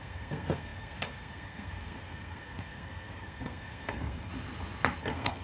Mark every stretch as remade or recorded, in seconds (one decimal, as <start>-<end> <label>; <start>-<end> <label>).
0.0-4.3 remade; 4.3-5.0 recorded; 5.0-5.4 remade

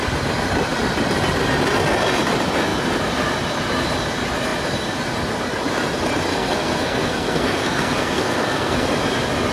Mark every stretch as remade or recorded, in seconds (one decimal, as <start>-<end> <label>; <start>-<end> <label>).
0.0-6.3 recorded; 6.3-8.9 remade; 8.9-9.5 recorded

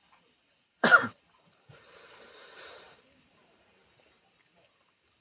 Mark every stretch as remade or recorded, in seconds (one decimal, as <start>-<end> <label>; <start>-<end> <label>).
0.0-5.2 remade

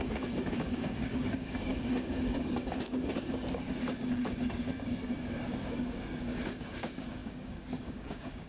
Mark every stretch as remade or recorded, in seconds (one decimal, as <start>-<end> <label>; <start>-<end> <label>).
0.0-8.5 remade

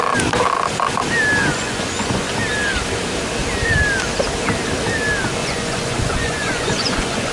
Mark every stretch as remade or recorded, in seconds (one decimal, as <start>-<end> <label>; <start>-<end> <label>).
0.0-1.4 recorded; 1.4-2.3 remade; 2.3-5.4 recorded; 5.4-7.3 remade

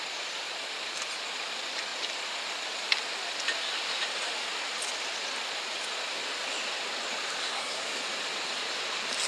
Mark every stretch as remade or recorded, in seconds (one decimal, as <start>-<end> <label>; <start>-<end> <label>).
0.0-7.4 recorded; 7.4-8.0 remade; 8.0-9.3 recorded